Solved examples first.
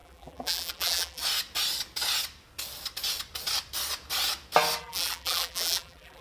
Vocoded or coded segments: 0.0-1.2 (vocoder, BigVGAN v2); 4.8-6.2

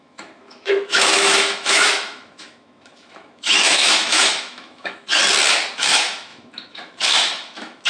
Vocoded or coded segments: 0.0-5.2 (autoencoder, DAC-VAE); 5.8-7.9

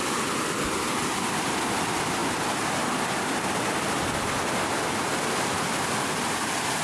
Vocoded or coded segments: 0.0-6.8 (vocoder, BigVGAN v2)

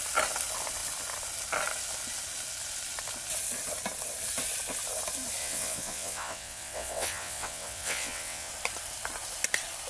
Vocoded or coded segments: 5.4-8.5 (vocoder, WaveNeXt)

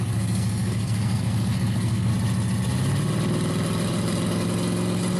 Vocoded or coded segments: 0.0-2.1 (codec, SNAC)

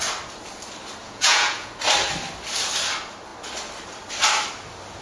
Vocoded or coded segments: 1.0-1.7 (vocoder, Vocos)